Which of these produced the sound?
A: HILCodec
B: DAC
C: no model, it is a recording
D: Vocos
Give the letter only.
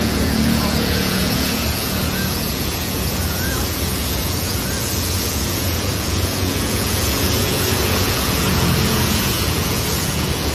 D